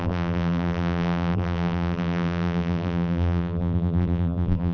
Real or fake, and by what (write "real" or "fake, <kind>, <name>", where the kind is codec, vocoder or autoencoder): fake, vocoder, BigVGAN v2